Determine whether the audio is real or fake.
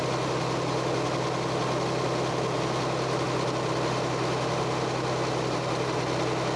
real